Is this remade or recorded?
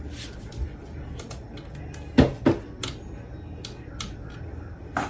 recorded